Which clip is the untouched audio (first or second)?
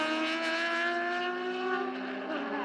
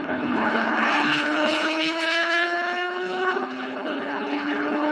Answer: first